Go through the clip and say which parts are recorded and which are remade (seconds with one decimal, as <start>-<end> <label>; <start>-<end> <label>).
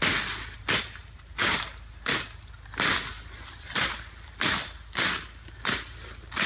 0.0-6.5 recorded